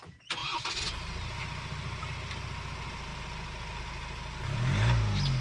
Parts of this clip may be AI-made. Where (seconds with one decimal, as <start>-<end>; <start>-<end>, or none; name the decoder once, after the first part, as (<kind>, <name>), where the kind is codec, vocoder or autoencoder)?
none